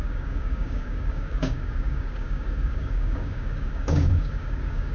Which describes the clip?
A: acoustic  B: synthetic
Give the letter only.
B